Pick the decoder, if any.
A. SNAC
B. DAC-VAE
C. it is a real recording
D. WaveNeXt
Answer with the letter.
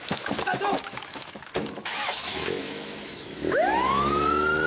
B